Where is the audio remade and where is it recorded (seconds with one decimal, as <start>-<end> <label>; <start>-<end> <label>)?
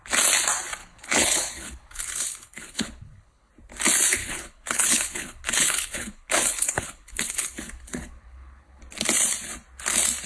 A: 0.0-0.8 recorded; 0.8-3.5 remade; 3.5-4.2 recorded; 4.2-8.8 remade; 8.8-10.3 recorded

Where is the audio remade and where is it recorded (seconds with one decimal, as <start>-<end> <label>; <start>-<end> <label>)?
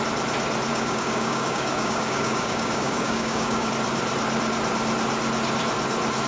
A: 0.0-0.7 recorded; 0.7-3.7 remade; 3.7-6.3 recorded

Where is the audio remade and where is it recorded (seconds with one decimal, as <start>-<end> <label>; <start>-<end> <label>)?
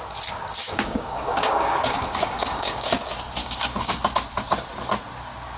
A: 0.0-0.6 recorded; 0.6-3.0 remade; 3.0-3.4 recorded; 3.4-4.0 remade; 4.0-5.6 recorded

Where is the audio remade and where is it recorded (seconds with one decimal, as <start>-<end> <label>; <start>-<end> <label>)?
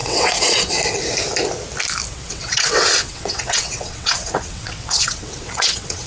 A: 0.0-0.7 remade; 0.7-2.1 recorded; 2.1-6.1 remade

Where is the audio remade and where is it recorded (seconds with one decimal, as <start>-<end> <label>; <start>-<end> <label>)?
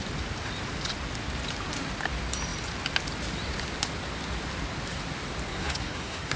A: 0.0-5.5 recorded; 5.5-6.4 remade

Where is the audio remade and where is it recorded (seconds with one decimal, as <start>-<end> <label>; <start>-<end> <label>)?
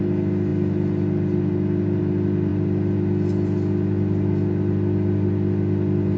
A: 0.0-6.2 recorded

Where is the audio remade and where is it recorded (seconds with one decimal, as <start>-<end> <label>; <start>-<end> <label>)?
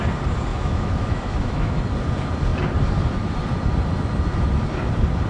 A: 0.0-0.5 recorded; 0.5-1.8 remade; 1.8-5.3 recorded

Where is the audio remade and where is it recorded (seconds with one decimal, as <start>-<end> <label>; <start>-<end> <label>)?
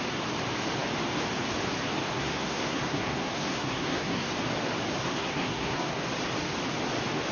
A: 0.0-2.1 recorded; 2.1-4.3 remade; 4.3-5.0 recorded; 5.0-6.0 remade; 6.0-7.3 recorded